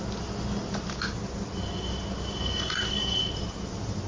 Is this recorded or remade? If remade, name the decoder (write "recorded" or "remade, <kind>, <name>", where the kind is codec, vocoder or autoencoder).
recorded